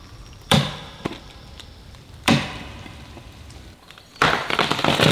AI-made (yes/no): yes